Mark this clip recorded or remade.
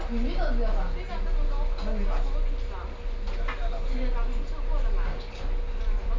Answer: recorded